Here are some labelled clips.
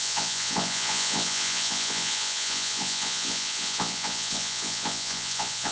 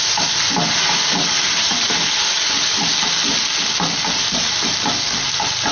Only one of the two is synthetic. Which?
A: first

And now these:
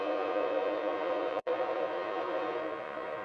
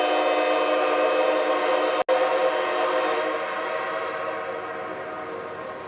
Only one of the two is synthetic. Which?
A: first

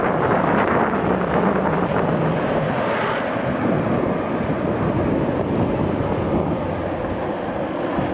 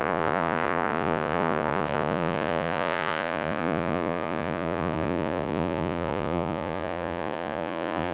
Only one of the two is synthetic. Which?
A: second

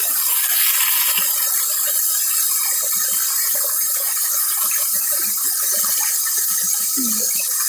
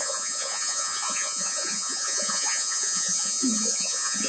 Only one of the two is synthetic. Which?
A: second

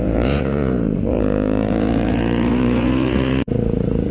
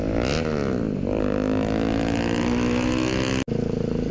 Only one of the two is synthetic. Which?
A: first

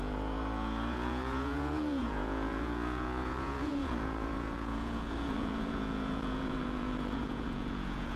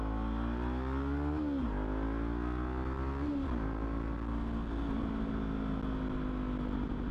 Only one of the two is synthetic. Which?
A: first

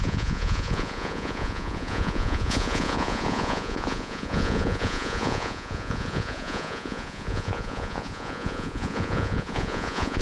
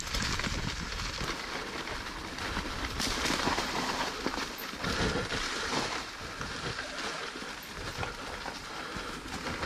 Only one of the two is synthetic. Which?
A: first